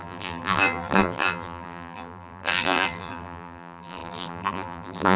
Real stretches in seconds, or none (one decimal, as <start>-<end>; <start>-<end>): none